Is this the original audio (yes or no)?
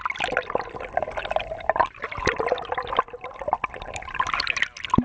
yes